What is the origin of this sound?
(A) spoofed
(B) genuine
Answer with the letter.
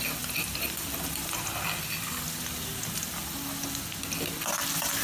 B